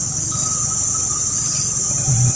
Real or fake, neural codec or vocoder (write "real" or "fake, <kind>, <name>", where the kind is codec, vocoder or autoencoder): fake, vocoder, BigVGAN v2